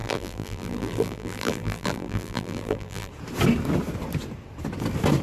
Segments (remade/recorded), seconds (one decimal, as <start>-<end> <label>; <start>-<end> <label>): 0.0-3.1 remade; 3.1-5.2 recorded